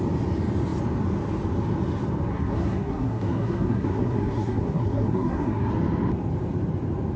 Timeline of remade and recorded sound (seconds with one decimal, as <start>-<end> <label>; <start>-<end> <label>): 0.0-2.3 recorded; 2.3-5.7 remade; 5.7-7.2 recorded